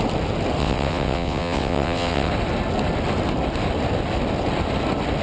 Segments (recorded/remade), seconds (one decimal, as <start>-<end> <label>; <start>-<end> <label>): 0.0-0.6 recorded; 0.6-2.3 remade; 2.3-5.2 recorded